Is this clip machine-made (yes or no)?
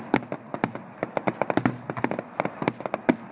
no